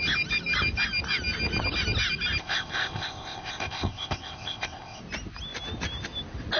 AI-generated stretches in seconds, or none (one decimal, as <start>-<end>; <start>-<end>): 2.4-5.0